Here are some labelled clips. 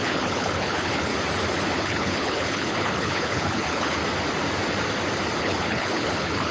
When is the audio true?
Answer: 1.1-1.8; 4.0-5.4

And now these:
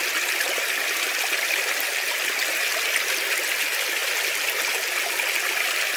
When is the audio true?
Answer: 0.0-6.0

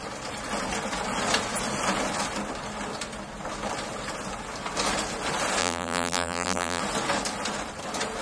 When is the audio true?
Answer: 0.0-5.6; 6.8-8.2

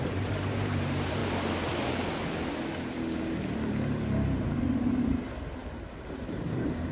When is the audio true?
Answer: 1.2-3.7

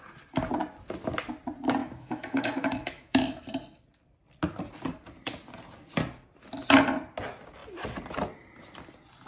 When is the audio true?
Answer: 0.0-1.8; 3.4-9.3